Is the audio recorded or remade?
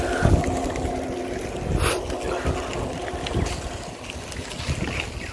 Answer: recorded